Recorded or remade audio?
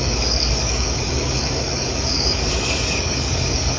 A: remade